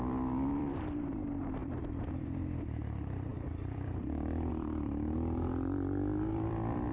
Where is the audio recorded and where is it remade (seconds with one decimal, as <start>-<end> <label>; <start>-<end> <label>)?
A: 0.0-6.9 remade